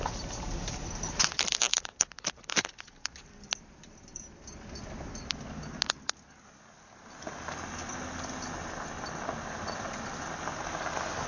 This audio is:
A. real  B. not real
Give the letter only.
A